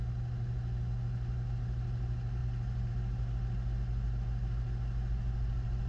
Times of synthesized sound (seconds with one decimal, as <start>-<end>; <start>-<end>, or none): none